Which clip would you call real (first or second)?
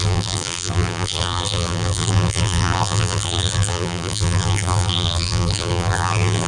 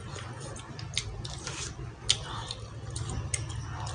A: second